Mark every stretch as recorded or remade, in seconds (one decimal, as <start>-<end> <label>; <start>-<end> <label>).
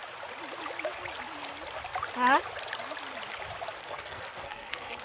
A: 0.0-3.8 recorded; 3.8-5.0 remade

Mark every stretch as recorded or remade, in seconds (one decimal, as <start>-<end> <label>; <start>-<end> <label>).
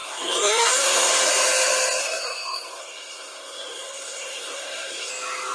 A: 0.0-1.1 remade; 1.1-2.0 recorded; 2.0-5.1 remade; 5.1-5.5 recorded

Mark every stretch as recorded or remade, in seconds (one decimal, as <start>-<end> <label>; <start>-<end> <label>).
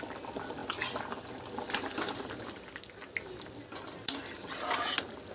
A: 0.0-5.3 recorded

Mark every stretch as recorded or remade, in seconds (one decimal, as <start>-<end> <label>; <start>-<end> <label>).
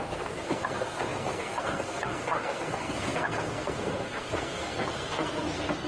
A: 0.0-5.9 remade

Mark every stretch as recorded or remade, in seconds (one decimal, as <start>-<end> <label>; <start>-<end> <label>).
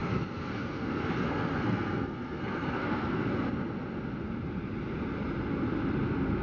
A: 0.0-3.2 remade; 3.2-6.4 recorded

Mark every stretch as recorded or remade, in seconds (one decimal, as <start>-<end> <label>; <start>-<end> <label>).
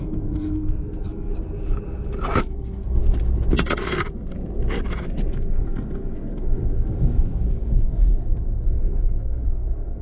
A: 0.0-1.3 remade; 1.3-2.4 recorded; 2.4-3.0 remade; 3.0-5.3 recorded; 5.3-10.0 remade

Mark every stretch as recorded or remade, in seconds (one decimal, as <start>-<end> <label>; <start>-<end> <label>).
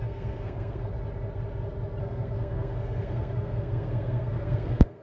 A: 0.0-0.9 remade; 0.9-2.0 recorded; 2.0-5.0 remade